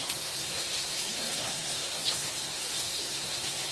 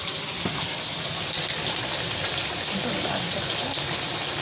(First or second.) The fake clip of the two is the first